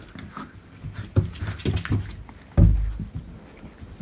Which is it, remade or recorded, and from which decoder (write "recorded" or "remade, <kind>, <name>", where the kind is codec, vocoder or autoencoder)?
recorded